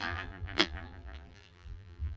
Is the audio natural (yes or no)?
no